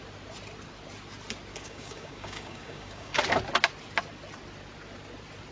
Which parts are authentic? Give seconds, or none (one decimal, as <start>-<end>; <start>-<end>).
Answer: 0.0-1.5; 3.2-5.5